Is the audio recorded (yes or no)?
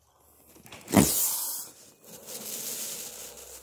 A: yes